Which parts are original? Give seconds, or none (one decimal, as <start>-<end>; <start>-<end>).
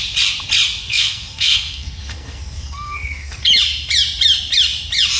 0.0-0.8; 3.4-5.2